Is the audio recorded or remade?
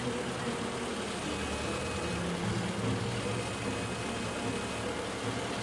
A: recorded